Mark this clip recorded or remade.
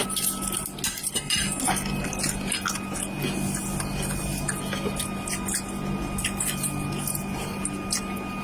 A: recorded